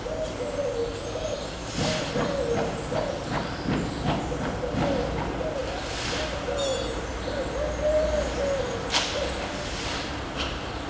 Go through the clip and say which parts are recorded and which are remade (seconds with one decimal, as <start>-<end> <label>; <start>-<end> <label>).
0.0-10.9 recorded